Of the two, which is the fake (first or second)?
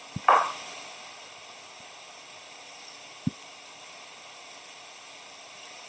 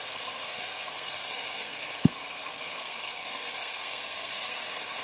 second